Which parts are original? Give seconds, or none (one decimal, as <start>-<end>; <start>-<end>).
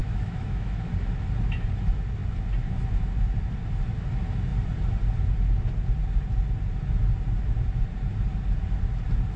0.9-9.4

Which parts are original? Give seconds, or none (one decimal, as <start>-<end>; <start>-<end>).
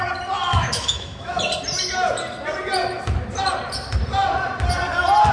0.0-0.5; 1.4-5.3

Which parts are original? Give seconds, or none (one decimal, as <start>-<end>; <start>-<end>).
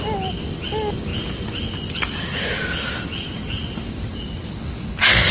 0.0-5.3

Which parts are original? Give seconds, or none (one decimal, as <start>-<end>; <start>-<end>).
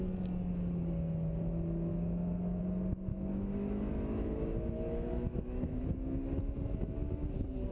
0.0-1.9; 2.6-3.1; 5.8-7.7